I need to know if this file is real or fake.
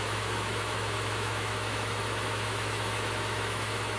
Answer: fake